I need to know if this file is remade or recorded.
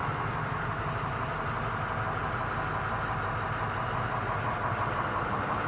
recorded